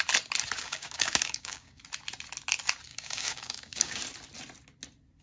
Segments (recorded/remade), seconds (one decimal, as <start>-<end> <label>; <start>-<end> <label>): 0.0-0.6 recorded; 0.6-1.8 remade; 1.8-2.9 recorded; 2.9-4.0 remade; 4.0-5.2 recorded